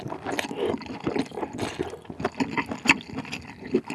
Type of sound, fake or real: real